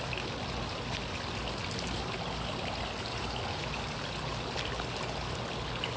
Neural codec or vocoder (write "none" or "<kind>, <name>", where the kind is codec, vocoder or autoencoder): none